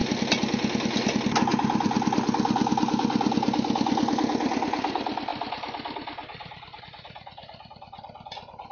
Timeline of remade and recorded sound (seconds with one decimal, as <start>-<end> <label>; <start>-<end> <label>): 0.0-8.7 recorded